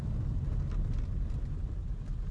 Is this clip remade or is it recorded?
recorded